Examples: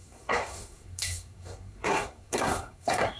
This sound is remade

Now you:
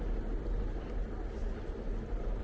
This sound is recorded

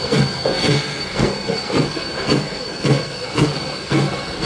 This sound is remade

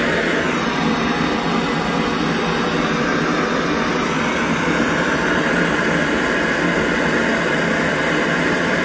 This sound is recorded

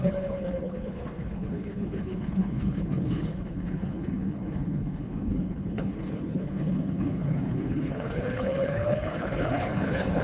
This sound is remade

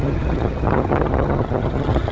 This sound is remade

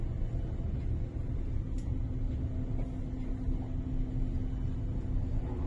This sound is recorded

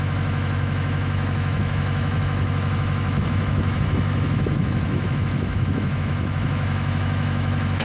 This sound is remade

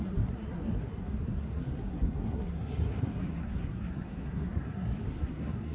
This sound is remade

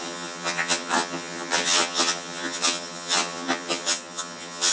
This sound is remade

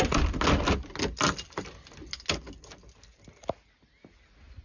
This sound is recorded